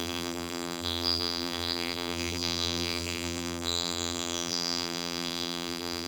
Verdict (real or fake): fake